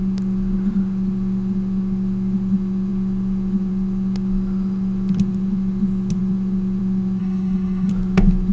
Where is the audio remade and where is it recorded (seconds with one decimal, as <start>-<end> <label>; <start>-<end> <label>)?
0.0-7.2 recorded; 7.2-7.9 remade; 7.9-8.5 recorded